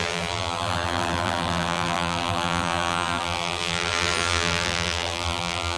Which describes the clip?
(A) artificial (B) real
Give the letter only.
A